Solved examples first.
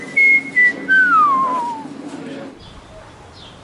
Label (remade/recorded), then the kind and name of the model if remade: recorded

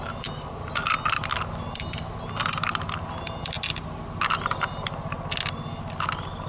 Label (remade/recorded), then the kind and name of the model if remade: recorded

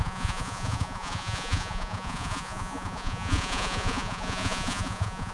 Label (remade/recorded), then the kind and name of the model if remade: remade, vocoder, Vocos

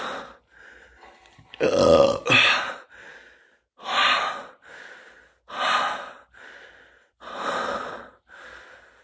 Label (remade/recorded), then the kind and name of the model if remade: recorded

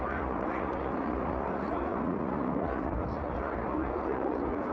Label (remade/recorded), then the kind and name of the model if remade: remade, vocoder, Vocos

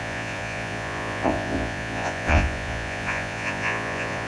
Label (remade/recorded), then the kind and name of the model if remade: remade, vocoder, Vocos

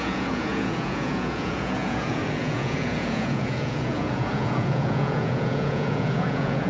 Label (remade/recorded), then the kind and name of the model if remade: remade, vocoder, Vocos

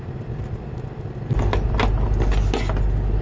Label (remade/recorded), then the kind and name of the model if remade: recorded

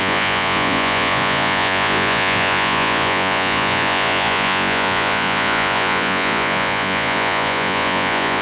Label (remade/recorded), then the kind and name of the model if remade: remade, vocoder, Vocos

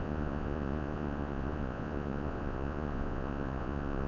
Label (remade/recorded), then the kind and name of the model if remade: remade, vocoder, Vocos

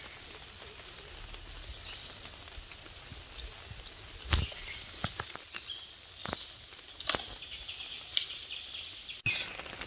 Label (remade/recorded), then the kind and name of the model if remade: recorded